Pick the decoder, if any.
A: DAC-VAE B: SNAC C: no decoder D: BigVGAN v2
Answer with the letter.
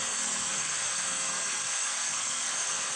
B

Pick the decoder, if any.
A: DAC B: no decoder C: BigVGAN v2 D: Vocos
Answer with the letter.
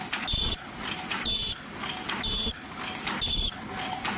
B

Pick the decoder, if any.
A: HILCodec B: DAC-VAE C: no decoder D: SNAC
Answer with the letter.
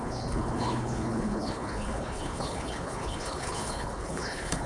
A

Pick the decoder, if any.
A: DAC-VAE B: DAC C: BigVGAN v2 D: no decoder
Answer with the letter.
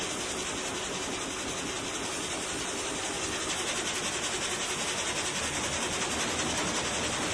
D